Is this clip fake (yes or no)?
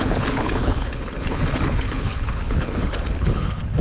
yes